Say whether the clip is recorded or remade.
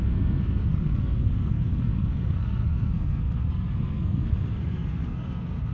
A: remade